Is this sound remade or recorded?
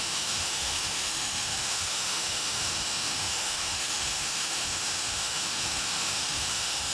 remade